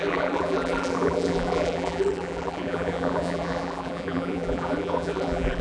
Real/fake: fake